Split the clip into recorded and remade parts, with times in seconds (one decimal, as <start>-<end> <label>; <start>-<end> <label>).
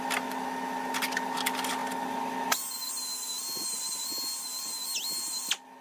0.0-5.8 recorded